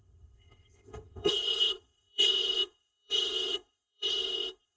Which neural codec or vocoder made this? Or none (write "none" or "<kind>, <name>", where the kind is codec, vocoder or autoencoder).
codec, ZipCodec